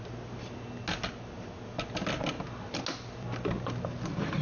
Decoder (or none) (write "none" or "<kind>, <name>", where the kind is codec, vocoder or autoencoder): none